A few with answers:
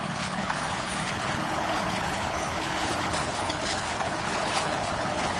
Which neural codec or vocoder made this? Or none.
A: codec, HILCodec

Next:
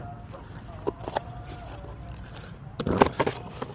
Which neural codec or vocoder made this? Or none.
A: vocoder, BigVGAN v2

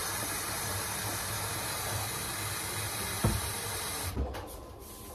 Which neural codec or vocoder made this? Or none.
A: vocoder, BigVGAN v2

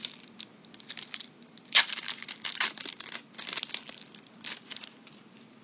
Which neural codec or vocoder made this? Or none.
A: none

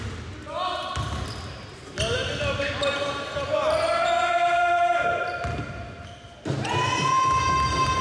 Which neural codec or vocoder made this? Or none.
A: none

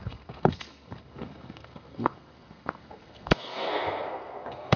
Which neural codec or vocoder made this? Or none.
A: codec, SNAC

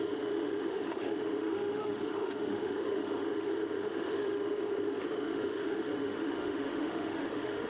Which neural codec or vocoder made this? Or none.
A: autoencoder, DAC-VAE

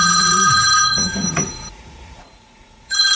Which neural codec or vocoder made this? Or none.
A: vocoder, Vocos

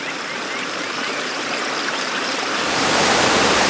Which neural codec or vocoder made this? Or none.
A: vocoder, BigVGAN v2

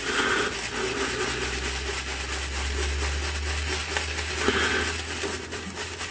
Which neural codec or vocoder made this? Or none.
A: none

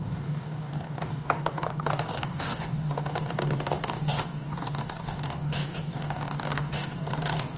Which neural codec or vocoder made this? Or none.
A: codec, DAC